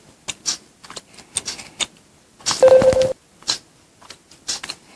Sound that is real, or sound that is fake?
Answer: real